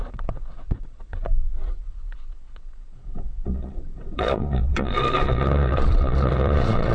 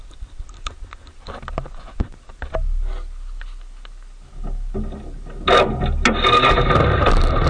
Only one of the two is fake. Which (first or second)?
first